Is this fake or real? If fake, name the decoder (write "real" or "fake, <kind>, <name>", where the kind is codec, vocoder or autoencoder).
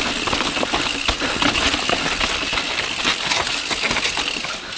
real